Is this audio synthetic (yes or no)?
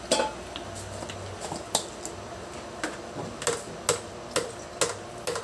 no